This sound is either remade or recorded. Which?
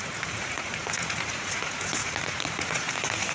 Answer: remade